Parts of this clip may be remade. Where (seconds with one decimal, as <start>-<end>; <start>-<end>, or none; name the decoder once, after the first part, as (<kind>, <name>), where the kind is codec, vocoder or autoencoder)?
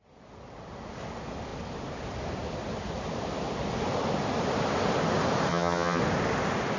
5.5-6.0 (vocoder, HiFi-GAN)